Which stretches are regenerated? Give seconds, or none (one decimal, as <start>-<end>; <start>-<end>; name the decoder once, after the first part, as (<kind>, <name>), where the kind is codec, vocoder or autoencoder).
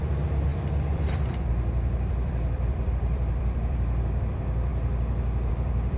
0.0-4.7 (vocoder, BigVGAN v2); 5.5-6.0